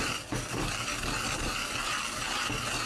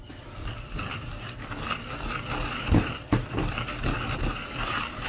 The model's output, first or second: second